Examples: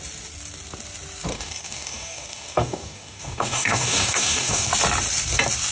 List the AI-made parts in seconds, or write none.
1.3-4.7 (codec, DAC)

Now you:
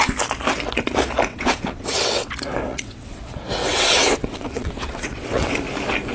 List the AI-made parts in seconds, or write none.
1.3-2.3 (vocoder, WaveNeXt); 2.7-3.2; 3.6-5.6

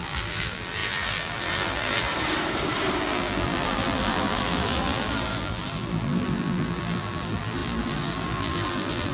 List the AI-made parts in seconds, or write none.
0.0-2.1 (vocoder, BigVGAN v2); 3.0-9.1

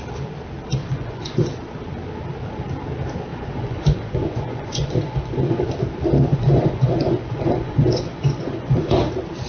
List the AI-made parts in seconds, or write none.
0.8-1.5 (vocoder, Vocos); 3.3-5.7; 6.3-9.1